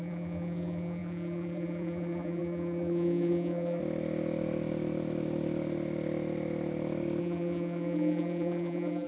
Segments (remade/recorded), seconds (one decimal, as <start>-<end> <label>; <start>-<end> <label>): 0.0-3.8 remade; 3.8-7.2 recorded; 7.2-9.1 remade